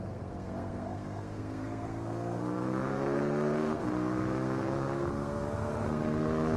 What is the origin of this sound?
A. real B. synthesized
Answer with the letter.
B